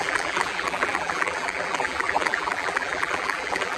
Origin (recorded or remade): remade